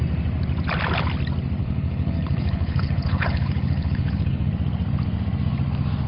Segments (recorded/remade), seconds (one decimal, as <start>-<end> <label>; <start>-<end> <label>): 0.0-1.6 recorded; 1.6-4.5 remade; 4.5-6.1 recorded